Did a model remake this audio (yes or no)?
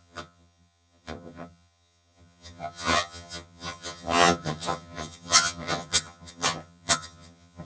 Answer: yes